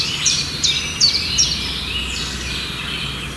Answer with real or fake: fake